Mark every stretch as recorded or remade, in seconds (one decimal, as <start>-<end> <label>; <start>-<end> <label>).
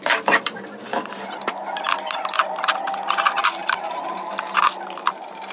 0.0-5.5 remade